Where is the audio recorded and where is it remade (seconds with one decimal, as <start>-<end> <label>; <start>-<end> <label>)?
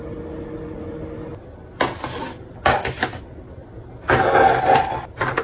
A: 0.0-5.4 recorded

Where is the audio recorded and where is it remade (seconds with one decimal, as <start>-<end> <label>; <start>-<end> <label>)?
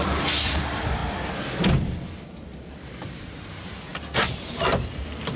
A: 0.0-1.0 remade; 1.0-2.9 recorded; 2.9-3.9 remade; 3.9-5.4 recorded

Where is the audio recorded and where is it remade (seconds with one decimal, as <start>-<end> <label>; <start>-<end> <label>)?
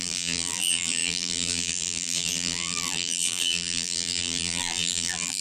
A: 0.0-5.4 remade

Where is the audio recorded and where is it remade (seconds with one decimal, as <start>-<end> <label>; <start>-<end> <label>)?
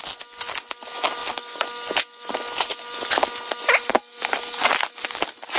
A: 0.0-5.6 recorded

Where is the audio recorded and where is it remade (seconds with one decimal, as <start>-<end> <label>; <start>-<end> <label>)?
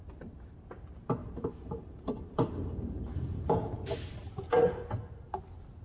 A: 0.0-1.2 recorded; 1.2-4.7 remade; 4.7-5.8 recorded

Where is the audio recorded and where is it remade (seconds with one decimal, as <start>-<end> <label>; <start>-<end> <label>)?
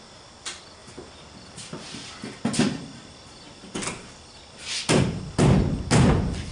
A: 0.0-6.5 recorded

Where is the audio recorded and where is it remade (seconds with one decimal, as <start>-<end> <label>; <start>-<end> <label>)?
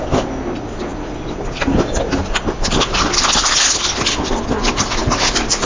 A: 0.0-5.7 recorded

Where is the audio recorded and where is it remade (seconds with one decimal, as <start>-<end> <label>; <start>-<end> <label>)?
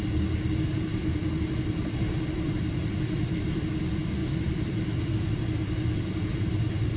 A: 0.0-0.9 recorded; 0.9-3.8 remade; 3.8-4.2 recorded; 4.2-7.0 remade